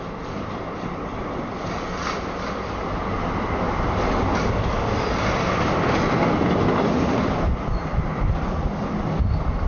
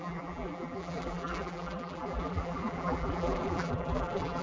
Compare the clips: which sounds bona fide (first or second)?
first